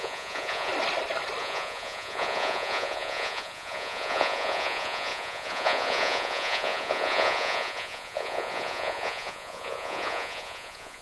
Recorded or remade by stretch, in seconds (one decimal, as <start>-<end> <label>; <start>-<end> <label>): 0.0-0.7 remade; 0.7-1.4 recorded; 1.4-11.0 remade